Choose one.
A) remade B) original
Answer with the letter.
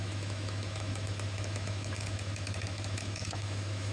A